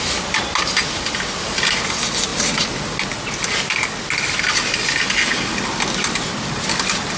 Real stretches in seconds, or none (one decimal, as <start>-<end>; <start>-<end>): 0.0-7.2